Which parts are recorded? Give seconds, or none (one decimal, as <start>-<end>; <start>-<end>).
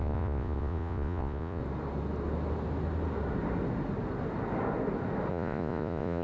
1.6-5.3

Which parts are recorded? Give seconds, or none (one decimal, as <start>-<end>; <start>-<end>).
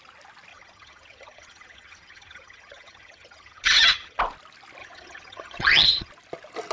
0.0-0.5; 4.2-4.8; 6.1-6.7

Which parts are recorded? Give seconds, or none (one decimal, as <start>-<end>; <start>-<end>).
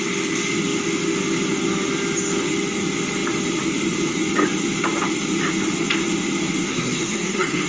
0.0-6.7